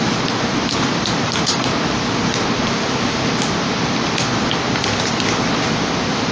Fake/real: real